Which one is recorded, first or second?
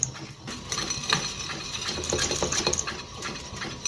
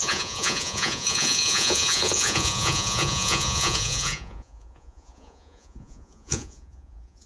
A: first